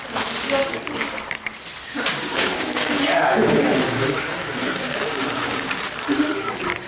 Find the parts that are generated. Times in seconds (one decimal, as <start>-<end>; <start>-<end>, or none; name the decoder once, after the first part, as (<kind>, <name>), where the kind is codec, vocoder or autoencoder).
2.1-5.8 (codec, DAC)

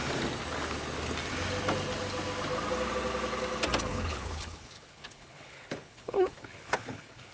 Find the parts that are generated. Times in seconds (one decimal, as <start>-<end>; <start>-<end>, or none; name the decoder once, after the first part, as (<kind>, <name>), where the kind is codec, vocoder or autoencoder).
3.9-7.3 (codec, HILCodec)

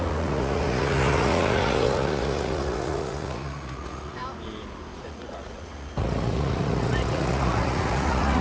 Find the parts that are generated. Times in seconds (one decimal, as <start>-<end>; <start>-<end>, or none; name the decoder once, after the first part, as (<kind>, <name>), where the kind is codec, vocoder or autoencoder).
0.0-4.2 (vocoder, Vocos); 5.0-8.4

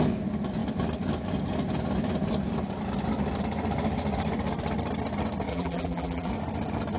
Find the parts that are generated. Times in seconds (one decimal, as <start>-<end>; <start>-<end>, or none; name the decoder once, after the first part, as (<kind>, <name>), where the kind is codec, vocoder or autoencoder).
5.5-6.3 (vocoder, BigVGAN v2)

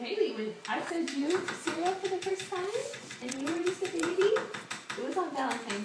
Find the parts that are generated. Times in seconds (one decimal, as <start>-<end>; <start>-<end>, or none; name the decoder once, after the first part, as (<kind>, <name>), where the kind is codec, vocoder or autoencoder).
1.2-2.3 (vocoder, Vocos); 2.8-4.3

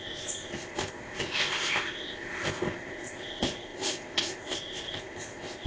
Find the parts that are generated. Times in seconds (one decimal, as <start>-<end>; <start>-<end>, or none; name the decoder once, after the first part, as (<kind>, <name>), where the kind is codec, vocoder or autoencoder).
0.0-5.7 (codec, ZipCodec)

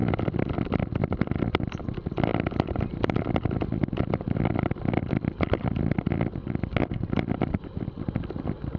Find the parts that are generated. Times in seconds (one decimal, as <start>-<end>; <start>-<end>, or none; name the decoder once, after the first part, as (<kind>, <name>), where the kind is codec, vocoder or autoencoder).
none